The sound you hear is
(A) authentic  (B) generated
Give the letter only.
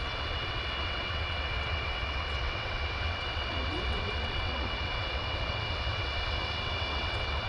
B